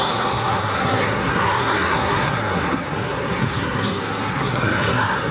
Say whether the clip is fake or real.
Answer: fake